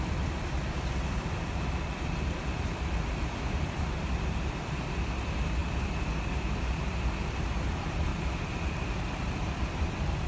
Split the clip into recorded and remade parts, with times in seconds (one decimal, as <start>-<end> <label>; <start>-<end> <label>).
0.0-8.1 remade; 8.1-8.8 recorded; 8.8-10.3 remade